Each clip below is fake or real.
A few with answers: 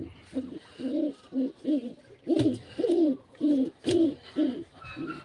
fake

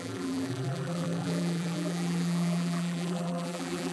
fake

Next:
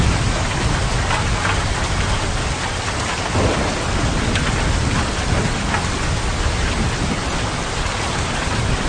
real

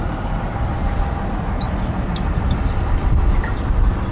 real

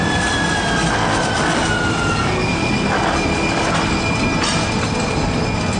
real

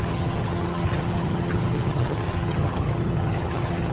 fake